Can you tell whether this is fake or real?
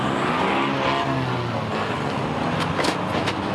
real